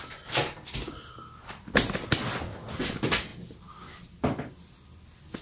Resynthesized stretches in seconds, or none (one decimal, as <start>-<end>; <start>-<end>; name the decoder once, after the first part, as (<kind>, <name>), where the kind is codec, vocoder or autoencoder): none